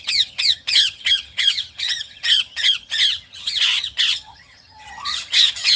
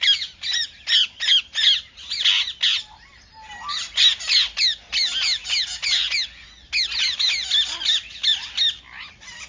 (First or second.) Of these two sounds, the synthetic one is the first